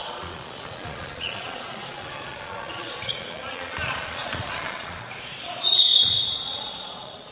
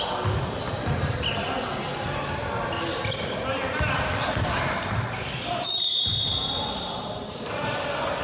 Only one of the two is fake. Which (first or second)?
first